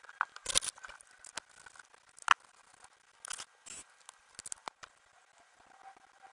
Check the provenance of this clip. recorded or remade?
recorded